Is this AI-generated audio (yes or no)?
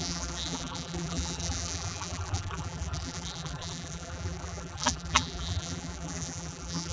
yes